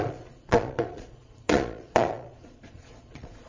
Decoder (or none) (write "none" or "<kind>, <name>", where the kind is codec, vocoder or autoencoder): vocoder, Vocos